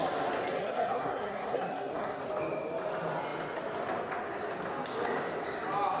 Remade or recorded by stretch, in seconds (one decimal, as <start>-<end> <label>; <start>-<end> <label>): 0.0-0.5 recorded; 0.5-2.2 remade; 2.2-6.0 recorded